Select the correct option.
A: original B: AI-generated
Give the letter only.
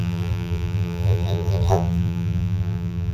B